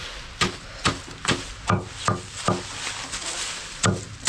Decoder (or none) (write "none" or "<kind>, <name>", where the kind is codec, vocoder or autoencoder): none